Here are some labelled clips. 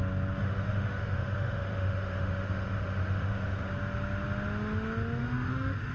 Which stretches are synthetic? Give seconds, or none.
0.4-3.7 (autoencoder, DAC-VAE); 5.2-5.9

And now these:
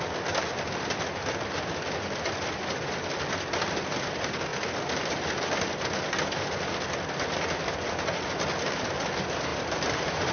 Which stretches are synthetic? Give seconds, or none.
9.5-10.3 (vocoder, BigVGAN v2)

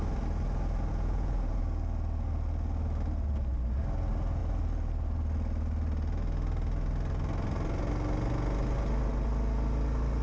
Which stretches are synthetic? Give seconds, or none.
0.9-1.6 (vocoder, Vocos)

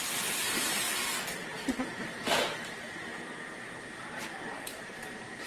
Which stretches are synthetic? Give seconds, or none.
1.4-4.2 (vocoder, BigVGAN v2); 4.7-5.5

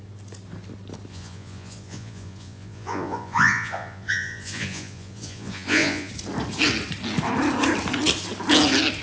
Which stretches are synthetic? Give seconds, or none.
1.1-6.1 (vocoder, Vocos)

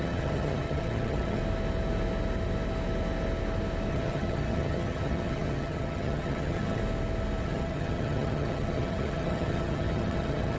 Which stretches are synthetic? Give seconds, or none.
0.0-1.4 (vocoder, HiFi-GAN); 3.9-6.8; 7.4-10.6